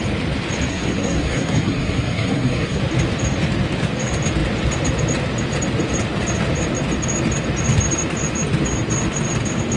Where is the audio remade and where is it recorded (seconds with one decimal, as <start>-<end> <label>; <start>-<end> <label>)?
0.0-0.7 recorded; 0.7-2.8 remade; 2.8-9.8 recorded